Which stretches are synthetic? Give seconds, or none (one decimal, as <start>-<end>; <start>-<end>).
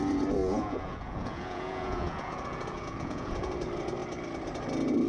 0.4-3.5